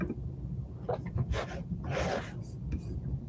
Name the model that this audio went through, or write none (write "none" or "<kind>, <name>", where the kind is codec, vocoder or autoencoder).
none